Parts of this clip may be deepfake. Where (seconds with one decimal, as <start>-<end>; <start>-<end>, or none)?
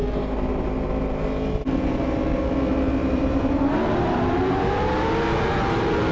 3.0-5.1